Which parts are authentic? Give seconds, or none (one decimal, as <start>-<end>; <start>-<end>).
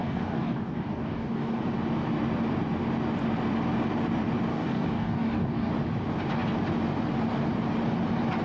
1.6-4.5; 5.7-8.4